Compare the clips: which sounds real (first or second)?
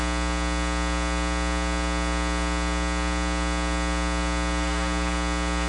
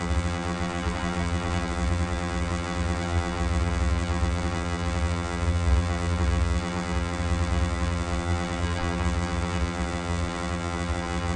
first